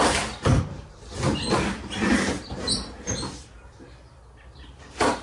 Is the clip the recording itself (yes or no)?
yes